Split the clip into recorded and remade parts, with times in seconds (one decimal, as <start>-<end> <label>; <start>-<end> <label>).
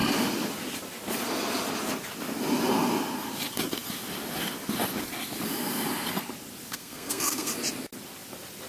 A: 0.0-6.7 recorded; 6.7-7.5 remade; 7.5-8.7 recorded